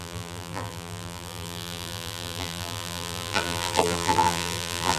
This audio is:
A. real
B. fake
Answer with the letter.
B